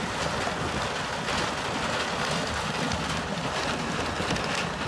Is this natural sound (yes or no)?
yes